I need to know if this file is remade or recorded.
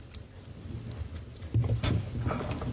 recorded